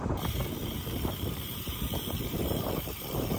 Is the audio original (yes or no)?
no